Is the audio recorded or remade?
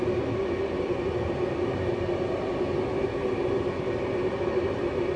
recorded